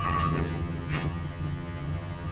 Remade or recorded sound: remade